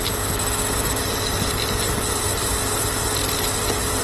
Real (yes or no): yes